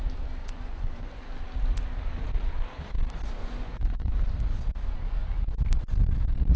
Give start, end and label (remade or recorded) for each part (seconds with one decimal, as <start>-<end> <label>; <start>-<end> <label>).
0.0-0.4 recorded; 0.4-1.3 remade; 1.3-3.4 recorded; 3.4-4.1 remade; 4.1-6.6 recorded